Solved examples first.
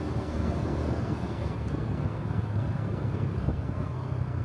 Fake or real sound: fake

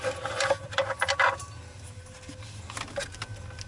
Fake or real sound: real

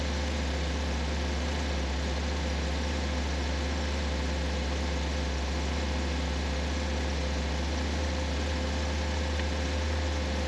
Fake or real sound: real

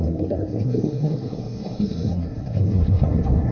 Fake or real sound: fake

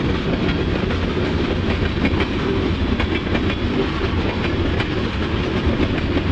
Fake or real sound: real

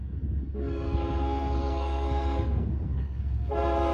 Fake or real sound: fake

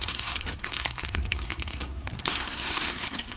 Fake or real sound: fake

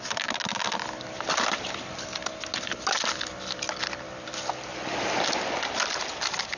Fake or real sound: real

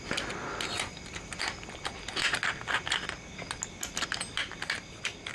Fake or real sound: real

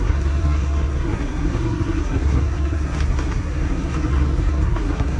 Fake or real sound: fake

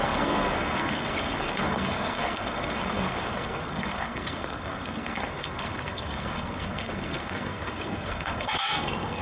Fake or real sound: fake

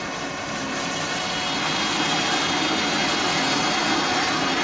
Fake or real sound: real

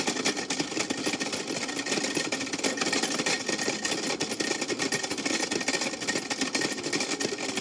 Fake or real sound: real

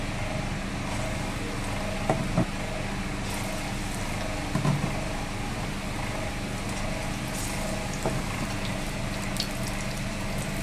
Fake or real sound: real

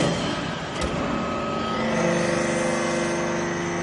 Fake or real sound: real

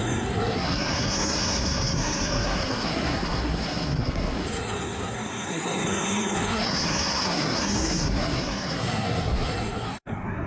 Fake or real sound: fake